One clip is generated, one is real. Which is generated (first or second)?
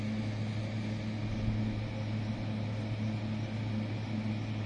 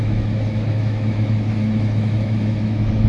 second